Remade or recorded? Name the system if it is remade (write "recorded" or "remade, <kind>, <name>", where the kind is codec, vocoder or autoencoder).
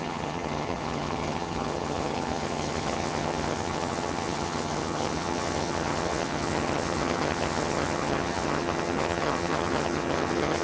remade, vocoder, HiFi-GAN